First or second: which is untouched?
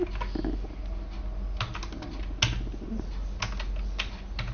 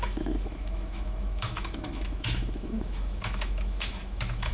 first